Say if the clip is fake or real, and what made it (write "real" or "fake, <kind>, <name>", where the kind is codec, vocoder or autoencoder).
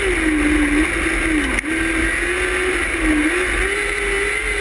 real